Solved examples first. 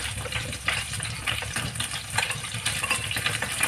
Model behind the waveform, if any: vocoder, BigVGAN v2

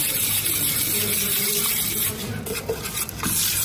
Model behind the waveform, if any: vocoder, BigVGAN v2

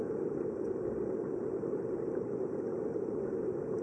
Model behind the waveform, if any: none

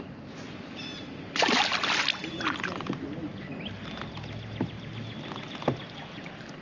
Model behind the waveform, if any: none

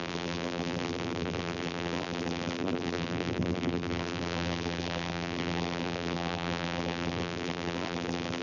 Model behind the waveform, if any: vocoder, BigVGAN v2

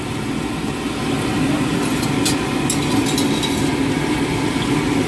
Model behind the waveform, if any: none